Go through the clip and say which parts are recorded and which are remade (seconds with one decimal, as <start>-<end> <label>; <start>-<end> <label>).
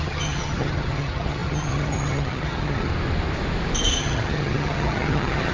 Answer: 0.0-2.9 remade; 2.9-4.0 recorded; 4.0-5.5 remade